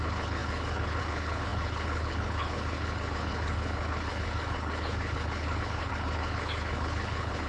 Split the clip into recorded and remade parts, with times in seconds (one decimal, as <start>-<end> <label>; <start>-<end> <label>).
0.0-7.5 remade